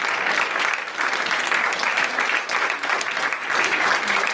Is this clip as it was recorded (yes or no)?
yes